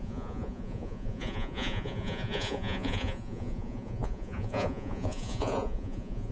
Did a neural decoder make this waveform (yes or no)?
yes